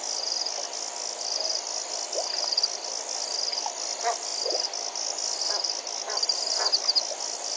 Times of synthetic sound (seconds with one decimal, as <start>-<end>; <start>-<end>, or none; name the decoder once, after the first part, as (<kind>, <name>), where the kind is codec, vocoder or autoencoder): none